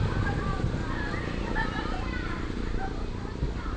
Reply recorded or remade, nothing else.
recorded